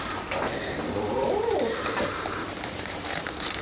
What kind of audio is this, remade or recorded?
remade